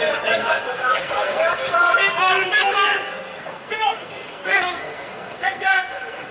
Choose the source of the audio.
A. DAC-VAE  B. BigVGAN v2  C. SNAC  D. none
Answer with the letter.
C